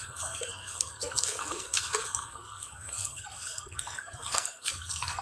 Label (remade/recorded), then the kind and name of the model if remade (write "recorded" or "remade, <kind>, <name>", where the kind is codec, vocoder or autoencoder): remade, codec, SNAC